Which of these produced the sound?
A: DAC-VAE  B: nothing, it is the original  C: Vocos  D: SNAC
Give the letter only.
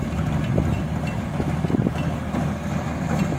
B